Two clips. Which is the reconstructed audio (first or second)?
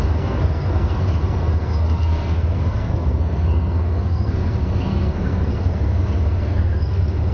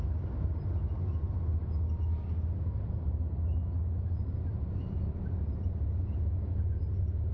first